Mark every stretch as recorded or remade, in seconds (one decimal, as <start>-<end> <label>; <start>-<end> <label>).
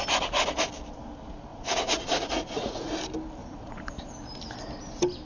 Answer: 0.0-1.5 recorded; 1.5-3.0 remade; 3.0-3.4 recorded; 3.4-3.9 remade; 3.9-5.3 recorded